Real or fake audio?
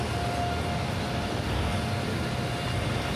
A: real